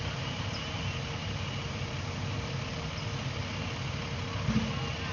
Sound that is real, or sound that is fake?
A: real